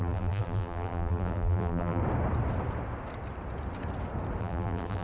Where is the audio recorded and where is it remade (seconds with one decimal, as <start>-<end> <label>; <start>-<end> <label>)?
0.0-2.0 remade; 2.0-4.4 recorded; 4.4-5.0 remade